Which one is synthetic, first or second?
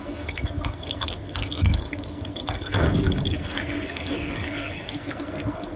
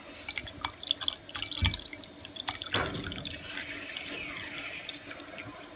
first